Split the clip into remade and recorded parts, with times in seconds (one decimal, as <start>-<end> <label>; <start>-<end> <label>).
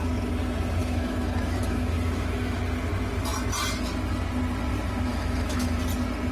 0.0-0.8 recorded; 0.8-2.6 remade; 2.6-5.1 recorded; 5.1-5.8 remade; 5.8-6.3 recorded